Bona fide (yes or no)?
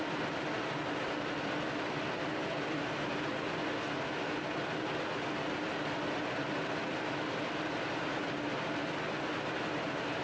yes